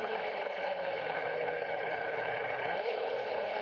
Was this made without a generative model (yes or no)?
no